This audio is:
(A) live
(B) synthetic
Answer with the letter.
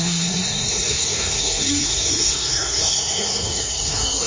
B